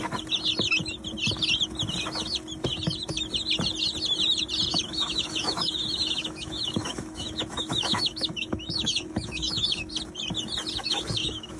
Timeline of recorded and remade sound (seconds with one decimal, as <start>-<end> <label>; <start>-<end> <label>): 0.0-4.7 recorded; 4.7-9.9 remade; 9.9-10.8 recorded; 10.8-11.6 remade